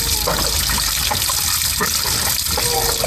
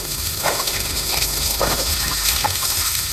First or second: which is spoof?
second